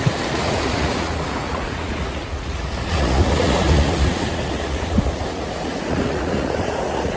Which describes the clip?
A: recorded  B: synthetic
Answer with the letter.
B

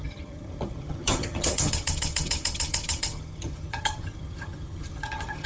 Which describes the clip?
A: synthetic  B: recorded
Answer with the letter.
A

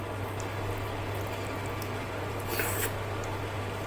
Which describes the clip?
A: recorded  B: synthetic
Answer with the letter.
A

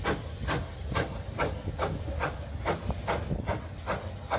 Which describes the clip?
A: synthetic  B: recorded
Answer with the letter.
B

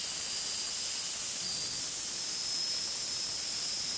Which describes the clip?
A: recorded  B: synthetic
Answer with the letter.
A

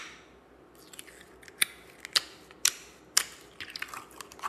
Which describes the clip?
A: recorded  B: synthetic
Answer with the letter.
A